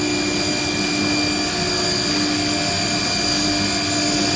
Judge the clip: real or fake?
real